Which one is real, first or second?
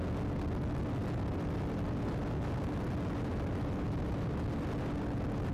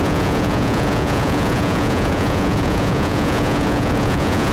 first